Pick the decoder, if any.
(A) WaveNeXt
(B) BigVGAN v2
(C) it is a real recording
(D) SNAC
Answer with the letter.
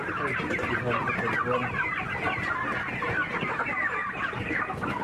C